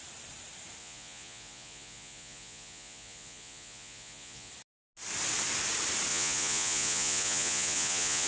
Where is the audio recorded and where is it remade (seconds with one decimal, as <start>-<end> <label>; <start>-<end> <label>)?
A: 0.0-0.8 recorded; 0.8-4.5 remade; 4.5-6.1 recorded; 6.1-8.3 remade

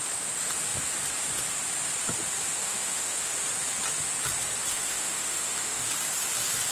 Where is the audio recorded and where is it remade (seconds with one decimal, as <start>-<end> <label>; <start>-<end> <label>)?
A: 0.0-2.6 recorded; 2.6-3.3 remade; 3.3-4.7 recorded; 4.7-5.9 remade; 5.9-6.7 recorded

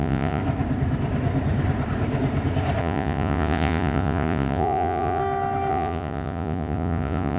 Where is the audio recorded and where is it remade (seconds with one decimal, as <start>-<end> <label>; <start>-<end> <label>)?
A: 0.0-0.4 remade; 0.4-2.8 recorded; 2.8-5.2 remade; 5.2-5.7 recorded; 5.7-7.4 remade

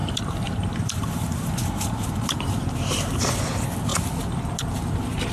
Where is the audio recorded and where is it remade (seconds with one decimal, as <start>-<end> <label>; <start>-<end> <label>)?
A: 0.0-3.2 remade; 3.2-3.9 recorded; 3.9-4.4 remade; 4.4-5.3 recorded